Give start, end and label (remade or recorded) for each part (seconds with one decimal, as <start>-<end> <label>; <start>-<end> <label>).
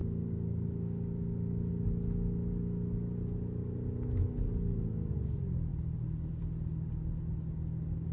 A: 0.0-1.7 remade; 1.7-8.1 recorded